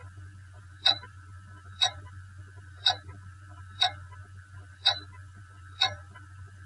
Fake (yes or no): yes